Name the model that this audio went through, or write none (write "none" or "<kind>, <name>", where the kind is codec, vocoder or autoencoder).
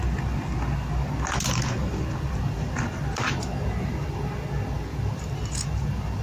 none